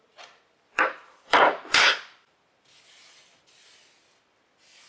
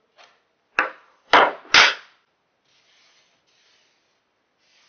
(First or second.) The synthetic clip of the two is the first